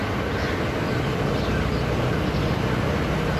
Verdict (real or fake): real